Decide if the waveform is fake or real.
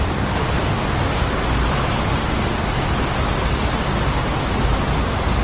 real